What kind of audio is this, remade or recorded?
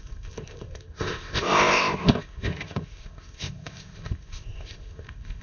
remade